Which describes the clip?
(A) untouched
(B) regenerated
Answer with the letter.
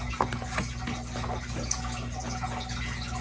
A